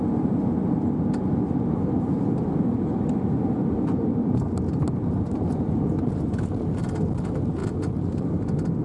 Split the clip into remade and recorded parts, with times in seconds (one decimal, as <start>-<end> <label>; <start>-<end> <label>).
0.0-8.8 recorded